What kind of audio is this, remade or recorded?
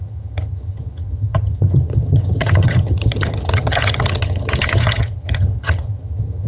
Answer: remade